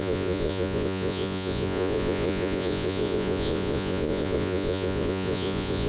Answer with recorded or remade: remade